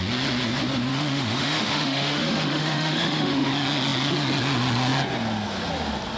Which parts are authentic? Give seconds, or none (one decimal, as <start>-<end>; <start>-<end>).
0.0-0.9; 3.5-6.2